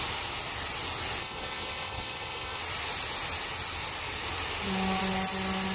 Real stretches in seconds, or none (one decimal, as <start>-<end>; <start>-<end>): 0.0-1.2; 2.6-5.7